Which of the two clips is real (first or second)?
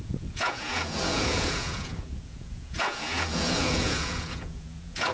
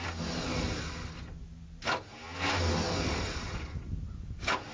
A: second